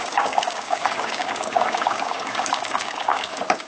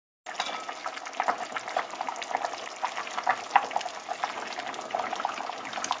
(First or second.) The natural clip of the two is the second